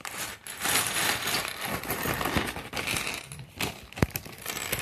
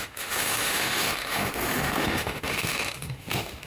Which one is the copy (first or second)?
second